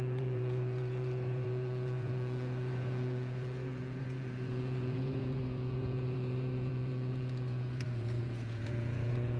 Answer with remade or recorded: remade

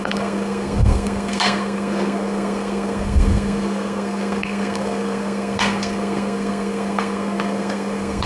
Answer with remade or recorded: remade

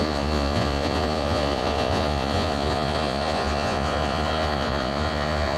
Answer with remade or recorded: remade